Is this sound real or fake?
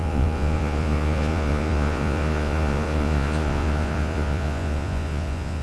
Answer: fake